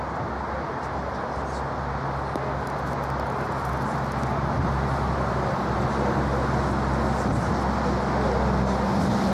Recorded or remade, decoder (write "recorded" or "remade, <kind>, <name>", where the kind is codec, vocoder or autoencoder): recorded